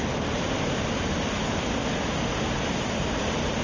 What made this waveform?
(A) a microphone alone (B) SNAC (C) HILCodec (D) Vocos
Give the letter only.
A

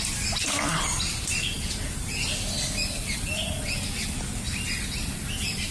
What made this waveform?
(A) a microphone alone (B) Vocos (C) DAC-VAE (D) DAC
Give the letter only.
A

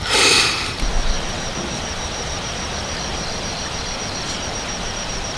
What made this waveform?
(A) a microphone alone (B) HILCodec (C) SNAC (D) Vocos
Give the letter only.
A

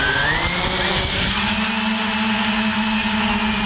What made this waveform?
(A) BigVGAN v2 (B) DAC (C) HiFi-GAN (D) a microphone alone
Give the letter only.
D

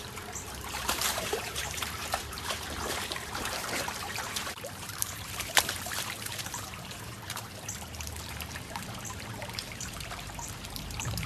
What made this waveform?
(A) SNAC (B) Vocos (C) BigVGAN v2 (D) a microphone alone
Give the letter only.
C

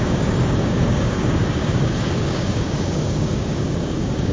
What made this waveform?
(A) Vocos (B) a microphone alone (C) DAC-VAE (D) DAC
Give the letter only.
D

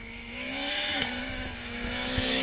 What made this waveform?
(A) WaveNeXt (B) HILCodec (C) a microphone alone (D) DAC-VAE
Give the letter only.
D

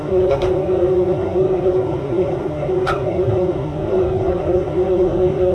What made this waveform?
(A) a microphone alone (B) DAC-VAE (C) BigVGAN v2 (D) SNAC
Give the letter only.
D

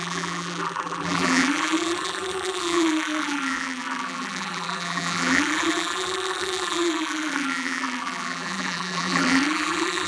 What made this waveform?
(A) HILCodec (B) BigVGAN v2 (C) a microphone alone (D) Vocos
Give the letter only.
B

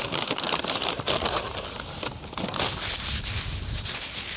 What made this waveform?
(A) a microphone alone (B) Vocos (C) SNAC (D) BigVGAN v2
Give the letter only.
A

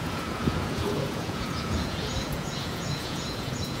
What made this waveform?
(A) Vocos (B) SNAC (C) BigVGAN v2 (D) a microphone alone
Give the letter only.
A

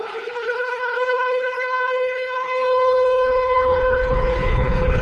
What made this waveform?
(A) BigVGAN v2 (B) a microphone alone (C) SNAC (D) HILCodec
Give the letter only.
D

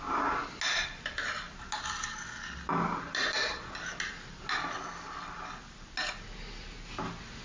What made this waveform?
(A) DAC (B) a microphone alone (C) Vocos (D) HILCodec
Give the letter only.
B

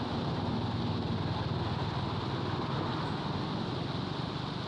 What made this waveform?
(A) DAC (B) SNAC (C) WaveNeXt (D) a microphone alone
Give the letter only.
D